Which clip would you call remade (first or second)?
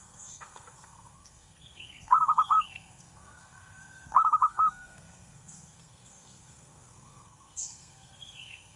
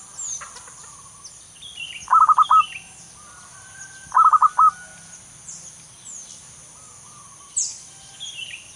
first